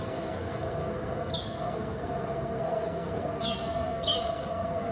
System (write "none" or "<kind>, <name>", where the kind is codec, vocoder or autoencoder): codec, SNAC